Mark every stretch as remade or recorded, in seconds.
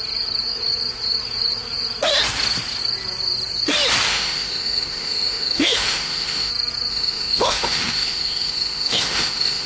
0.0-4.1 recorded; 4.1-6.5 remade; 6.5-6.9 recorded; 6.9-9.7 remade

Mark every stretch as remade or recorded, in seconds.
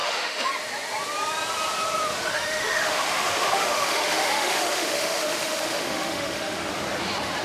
0.0-0.5 remade; 0.5-2.3 recorded; 2.3-6.7 remade; 6.7-7.4 recorded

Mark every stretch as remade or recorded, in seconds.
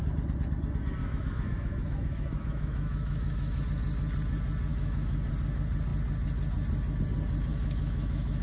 0.0-1.0 recorded; 1.0-3.6 remade; 3.6-4.7 recorded; 4.7-5.3 remade; 5.3-7.5 recorded; 7.5-8.4 remade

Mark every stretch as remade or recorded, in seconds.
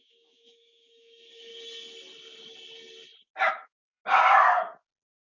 0.0-1.5 remade; 1.5-3.5 recorded; 3.5-4.0 remade; 4.0-5.2 recorded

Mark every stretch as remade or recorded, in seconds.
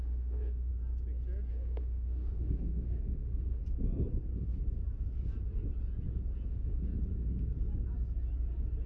0.0-0.7 remade; 0.7-1.5 recorded; 1.5-3.6 remade; 3.6-6.5 recorded; 6.5-6.9 remade; 6.9-8.9 recorded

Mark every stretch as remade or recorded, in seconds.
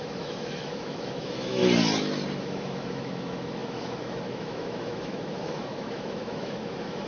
0.0-1.6 remade; 1.6-2.4 recorded; 2.4-7.1 remade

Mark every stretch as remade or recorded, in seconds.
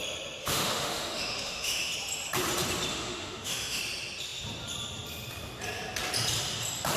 0.0-0.4 recorded; 0.4-1.9 remade; 1.9-2.9 recorded; 2.9-3.8 remade; 3.8-7.0 recorded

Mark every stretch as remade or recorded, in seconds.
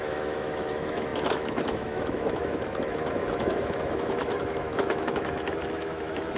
0.0-6.4 remade